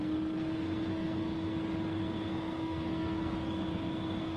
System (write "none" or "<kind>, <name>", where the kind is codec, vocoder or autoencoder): codec, SNAC